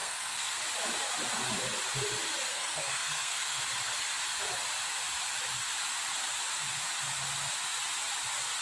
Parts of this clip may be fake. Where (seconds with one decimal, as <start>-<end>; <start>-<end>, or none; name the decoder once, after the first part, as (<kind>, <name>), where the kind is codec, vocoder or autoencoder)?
0.0-0.6 (codec, SNAC); 2.5-3.6